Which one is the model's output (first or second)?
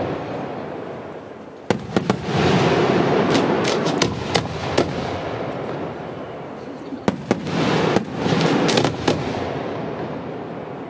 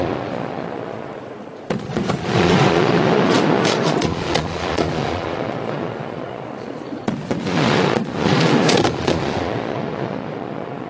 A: second